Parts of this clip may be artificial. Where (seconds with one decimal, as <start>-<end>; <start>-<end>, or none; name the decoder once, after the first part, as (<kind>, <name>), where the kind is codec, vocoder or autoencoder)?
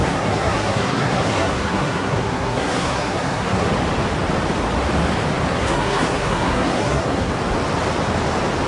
0.0-3.7 (codec, SNAC); 5.5-7.3